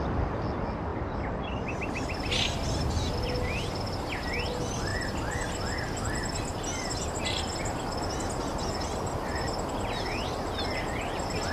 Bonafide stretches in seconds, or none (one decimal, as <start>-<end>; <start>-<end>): 0.0-0.9; 4.0-4.9; 7.2-11.5

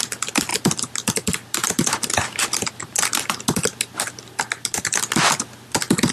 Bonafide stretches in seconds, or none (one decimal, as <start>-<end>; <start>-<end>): 0.0-6.1

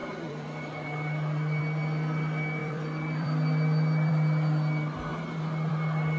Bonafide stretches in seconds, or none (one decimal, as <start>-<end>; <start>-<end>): 1.6-2.6; 4.1-6.2

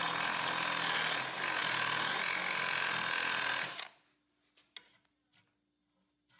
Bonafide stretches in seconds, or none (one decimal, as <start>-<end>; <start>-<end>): 0.0-6.4